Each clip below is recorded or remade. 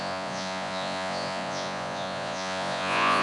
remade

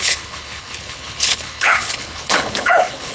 remade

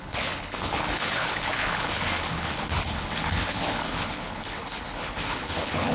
remade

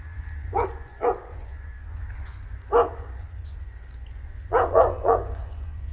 remade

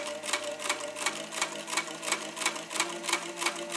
recorded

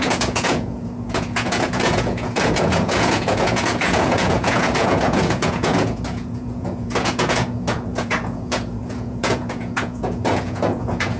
remade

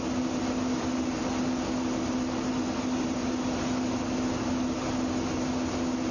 recorded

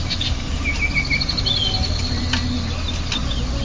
recorded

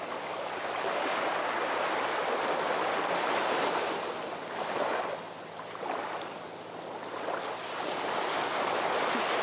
recorded